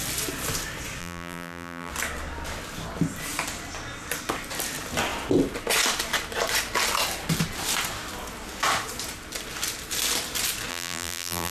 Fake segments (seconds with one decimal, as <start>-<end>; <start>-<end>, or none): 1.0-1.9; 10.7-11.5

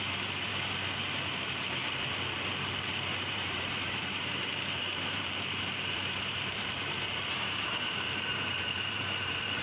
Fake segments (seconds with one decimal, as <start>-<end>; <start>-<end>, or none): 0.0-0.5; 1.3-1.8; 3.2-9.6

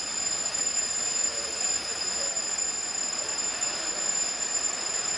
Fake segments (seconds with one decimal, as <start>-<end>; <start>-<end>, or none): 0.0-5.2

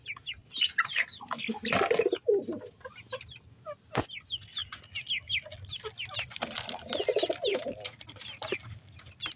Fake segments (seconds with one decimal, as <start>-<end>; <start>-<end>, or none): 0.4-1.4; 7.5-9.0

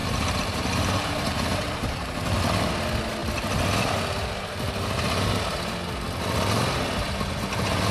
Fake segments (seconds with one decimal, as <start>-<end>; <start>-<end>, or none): 0.0-2.4